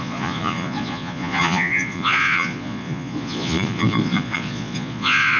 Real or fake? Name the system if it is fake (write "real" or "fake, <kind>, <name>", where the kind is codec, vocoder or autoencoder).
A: fake, vocoder, Vocos